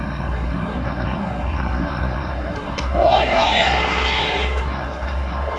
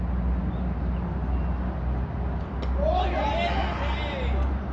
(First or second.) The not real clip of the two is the first